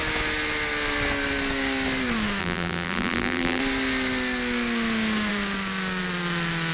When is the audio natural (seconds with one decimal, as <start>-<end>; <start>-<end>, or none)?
0.0-2.4; 3.6-6.7